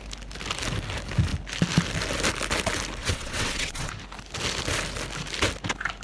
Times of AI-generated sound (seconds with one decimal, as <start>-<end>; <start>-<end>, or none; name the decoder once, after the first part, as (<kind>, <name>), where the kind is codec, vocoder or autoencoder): 3.0-3.9 (vocoder, WaveNeXt)